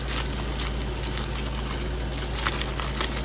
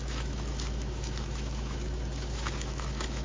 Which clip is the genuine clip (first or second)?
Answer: first